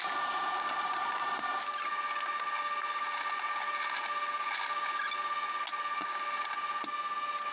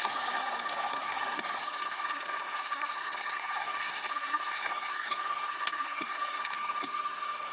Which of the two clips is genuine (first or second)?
first